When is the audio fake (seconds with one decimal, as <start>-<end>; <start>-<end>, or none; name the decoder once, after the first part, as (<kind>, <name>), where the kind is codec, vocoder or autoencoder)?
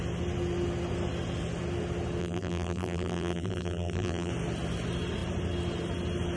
2.2-4.3 (vocoder, BigVGAN v2)